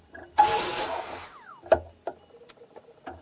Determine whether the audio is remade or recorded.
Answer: recorded